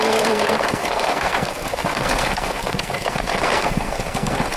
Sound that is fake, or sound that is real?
fake